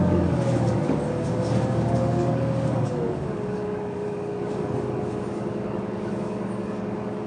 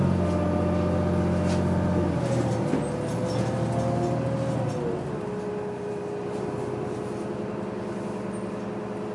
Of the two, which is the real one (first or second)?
second